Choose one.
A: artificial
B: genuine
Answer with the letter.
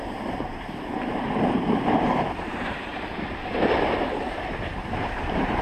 A